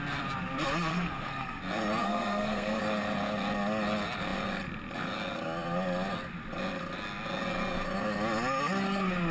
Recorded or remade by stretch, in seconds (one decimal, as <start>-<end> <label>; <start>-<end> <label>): 0.0-0.9 recorded; 0.9-1.6 remade; 1.6-2.0 recorded; 2.0-2.8 remade; 2.8-9.3 recorded